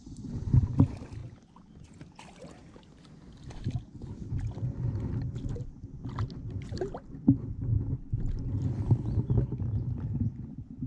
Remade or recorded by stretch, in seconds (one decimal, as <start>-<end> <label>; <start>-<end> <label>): 0.0-10.9 recorded